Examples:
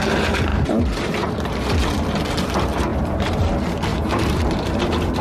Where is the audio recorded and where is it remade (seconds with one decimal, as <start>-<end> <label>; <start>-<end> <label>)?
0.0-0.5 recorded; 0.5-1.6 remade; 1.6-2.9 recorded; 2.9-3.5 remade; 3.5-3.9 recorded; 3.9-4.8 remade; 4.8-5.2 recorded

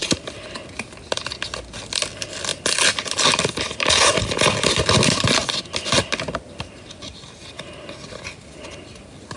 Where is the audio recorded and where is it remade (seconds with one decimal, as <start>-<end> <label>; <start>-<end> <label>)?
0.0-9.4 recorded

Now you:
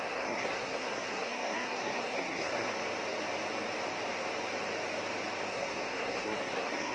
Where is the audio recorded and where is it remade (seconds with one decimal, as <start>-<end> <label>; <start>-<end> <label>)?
0.0-2.7 remade; 2.7-5.5 recorded; 5.5-6.9 remade